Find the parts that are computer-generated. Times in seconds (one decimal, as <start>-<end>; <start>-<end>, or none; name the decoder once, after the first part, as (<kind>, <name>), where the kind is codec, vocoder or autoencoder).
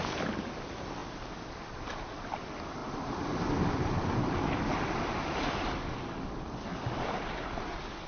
none